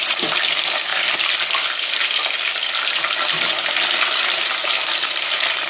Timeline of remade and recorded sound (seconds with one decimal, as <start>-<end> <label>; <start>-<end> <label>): 0.0-5.7 recorded